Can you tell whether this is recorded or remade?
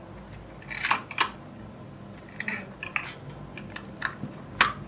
recorded